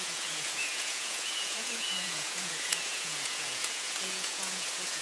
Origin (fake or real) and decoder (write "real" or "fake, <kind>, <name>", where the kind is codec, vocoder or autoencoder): fake, vocoder, Vocos